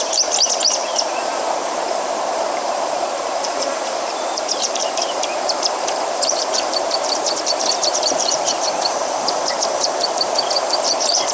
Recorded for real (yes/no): no